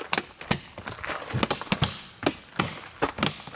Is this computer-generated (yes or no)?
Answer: no